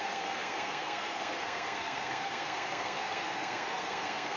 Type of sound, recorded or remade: remade